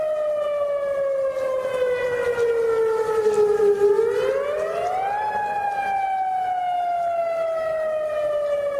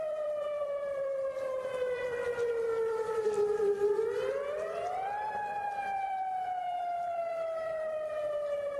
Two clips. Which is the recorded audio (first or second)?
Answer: first